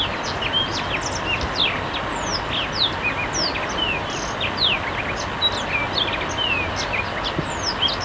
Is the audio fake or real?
real